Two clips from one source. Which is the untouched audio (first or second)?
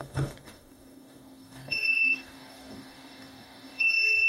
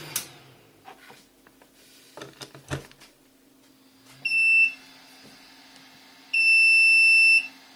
second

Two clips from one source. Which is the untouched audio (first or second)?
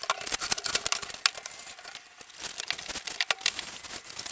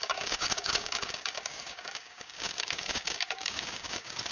first